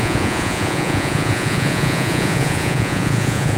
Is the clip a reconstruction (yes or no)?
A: yes